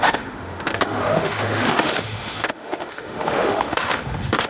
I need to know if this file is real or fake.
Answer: fake